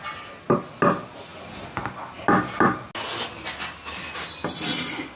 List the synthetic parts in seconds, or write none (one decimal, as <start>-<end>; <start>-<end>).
none